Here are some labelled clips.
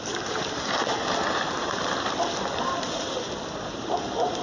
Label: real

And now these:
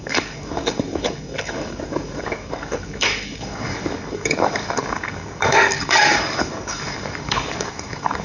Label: fake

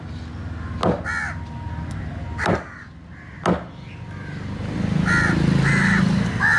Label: real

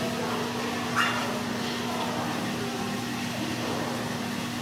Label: real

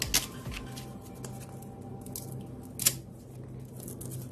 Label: real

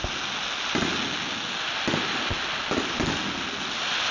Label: real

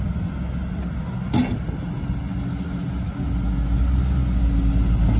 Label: real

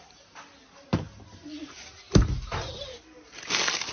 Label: real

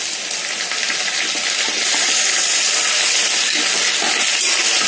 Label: real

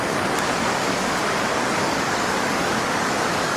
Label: fake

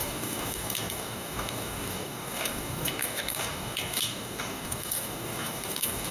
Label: fake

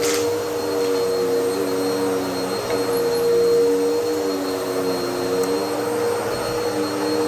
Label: real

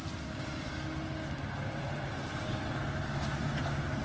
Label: real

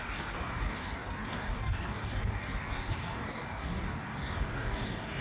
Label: fake